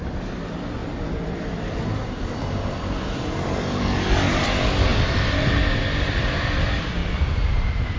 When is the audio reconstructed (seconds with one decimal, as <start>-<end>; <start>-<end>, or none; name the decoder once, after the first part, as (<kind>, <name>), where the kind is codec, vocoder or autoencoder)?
0.8-3.8 (vocoder, BigVGAN v2)